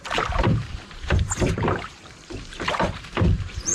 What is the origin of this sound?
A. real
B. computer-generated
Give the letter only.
B